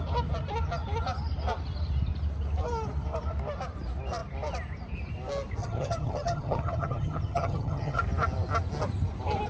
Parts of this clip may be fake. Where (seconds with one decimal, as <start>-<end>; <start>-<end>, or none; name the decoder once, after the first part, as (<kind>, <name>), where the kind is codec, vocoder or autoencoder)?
5.6-8.0 (vocoder, HiFi-GAN)